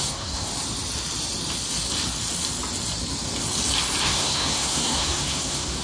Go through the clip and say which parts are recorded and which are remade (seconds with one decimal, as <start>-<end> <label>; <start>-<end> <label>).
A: 0.0-0.5 remade; 0.5-4.0 recorded; 4.0-5.8 remade